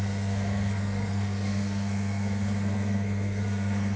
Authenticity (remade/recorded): remade